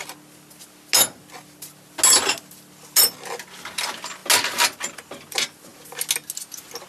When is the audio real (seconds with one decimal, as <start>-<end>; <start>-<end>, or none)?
0.0-6.9